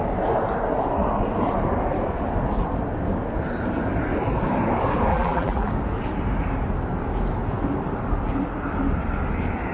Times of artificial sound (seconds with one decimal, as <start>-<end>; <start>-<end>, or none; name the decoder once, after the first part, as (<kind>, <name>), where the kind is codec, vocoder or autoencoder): 5.1-5.7 (vocoder, BigVGAN v2)